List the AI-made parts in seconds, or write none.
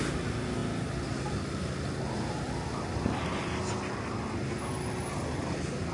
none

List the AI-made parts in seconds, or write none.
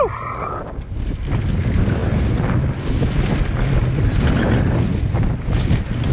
none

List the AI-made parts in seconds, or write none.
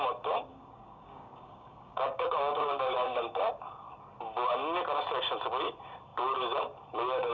0.5-3.4 (codec, DAC)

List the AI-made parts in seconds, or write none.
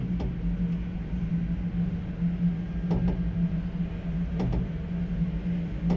none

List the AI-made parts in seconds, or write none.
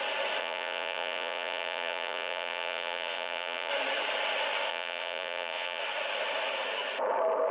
0.4-3.7 (vocoder, Vocos); 4.7-5.8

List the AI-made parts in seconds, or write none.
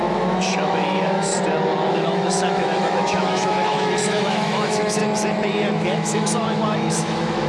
0.0-1.3 (autoencoder, DAC-VAE); 1.9-5.0; 5.7-7.5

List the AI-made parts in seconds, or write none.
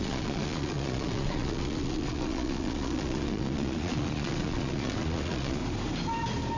0.0-5.6 (vocoder, Vocos)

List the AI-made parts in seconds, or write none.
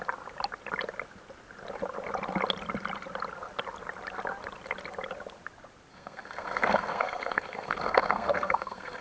5.9-9.0 (codec, SNAC)